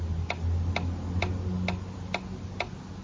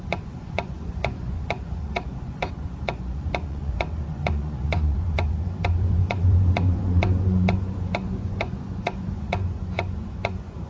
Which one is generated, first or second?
second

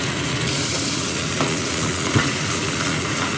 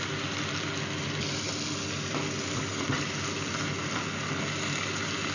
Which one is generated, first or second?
first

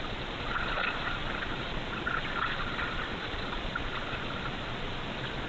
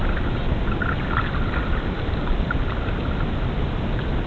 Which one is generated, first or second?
first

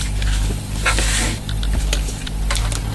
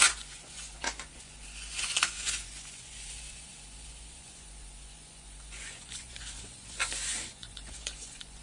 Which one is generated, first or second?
second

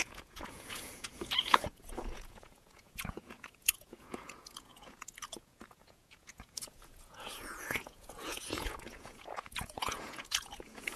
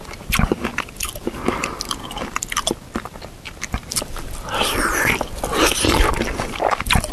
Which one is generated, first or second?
first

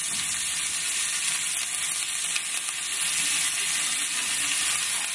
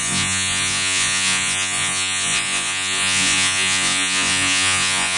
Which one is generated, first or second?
second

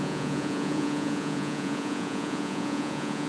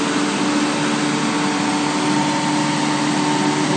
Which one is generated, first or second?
first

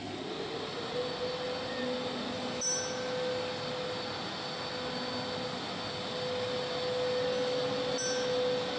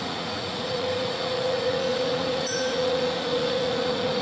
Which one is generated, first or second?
second